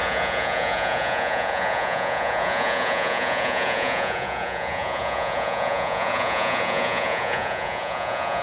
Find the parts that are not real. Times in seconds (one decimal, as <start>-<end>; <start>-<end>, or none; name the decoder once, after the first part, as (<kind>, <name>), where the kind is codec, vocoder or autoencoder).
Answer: 0.0-8.4 (vocoder, Vocos)